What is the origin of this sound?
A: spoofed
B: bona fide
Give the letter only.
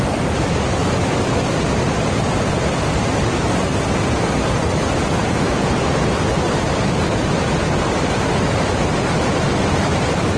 A